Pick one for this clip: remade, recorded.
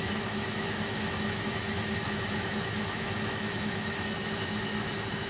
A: remade